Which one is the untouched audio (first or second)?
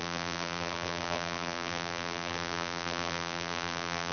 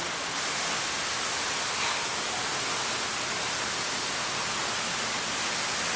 second